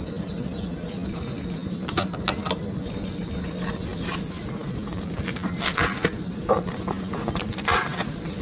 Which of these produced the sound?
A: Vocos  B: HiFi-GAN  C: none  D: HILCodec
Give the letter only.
C